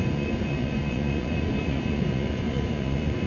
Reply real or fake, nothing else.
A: fake